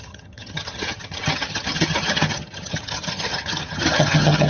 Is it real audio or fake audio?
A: fake